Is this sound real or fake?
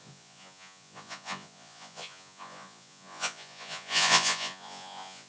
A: fake